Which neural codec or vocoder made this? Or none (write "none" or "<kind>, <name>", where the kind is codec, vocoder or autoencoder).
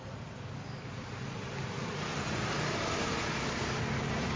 none